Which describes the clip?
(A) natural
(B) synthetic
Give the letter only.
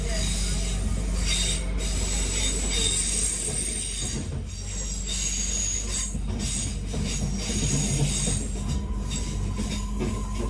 A